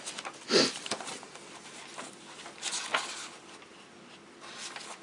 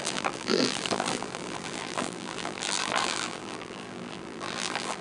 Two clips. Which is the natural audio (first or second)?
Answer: first